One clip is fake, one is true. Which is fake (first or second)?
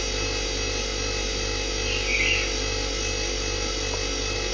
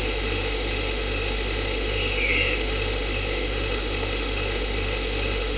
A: second